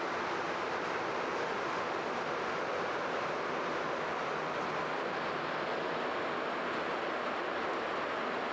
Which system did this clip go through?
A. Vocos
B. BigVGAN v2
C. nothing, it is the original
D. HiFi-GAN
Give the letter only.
C